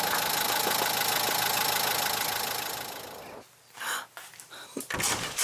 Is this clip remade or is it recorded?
recorded